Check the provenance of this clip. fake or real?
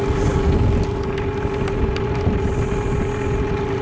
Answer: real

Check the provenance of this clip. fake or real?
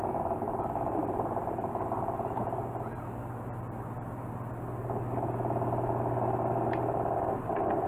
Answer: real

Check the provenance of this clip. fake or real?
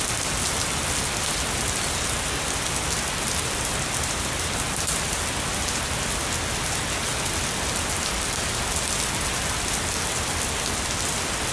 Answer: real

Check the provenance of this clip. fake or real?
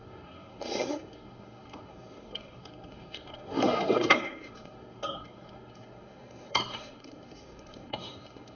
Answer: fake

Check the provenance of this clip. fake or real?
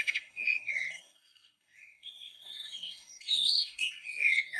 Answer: fake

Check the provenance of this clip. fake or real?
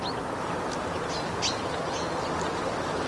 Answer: real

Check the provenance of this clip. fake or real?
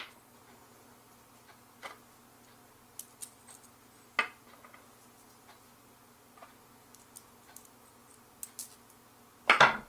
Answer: real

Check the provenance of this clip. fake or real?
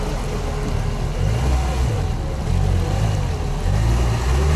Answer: real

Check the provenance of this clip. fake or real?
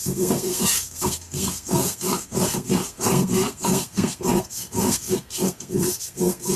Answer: fake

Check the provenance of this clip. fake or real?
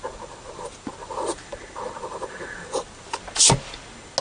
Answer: real